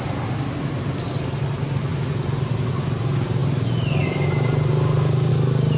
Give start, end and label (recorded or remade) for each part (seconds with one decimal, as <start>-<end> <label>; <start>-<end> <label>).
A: 0.0-5.8 recorded